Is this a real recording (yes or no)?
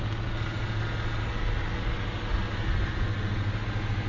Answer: yes